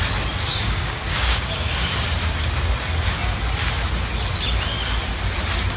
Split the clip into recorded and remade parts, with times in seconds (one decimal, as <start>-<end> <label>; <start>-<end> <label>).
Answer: 0.0-0.5 recorded; 0.5-1.9 remade; 1.9-5.8 recorded